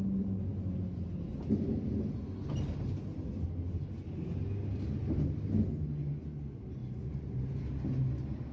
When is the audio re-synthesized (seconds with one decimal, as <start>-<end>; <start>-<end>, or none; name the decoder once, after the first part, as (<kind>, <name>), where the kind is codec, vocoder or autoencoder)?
6.8-7.6 (vocoder, BigVGAN v2)